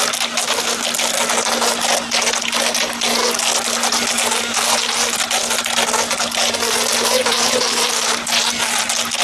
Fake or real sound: real